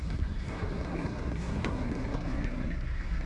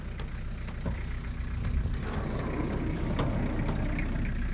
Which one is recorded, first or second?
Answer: second